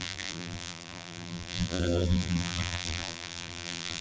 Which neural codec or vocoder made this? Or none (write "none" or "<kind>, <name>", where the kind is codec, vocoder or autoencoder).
vocoder, BigVGAN v2